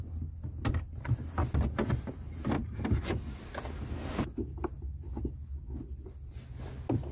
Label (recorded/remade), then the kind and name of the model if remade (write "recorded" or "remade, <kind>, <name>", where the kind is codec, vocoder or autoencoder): recorded